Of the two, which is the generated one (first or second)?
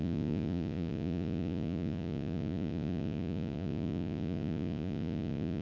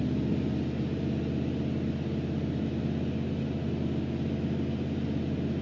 first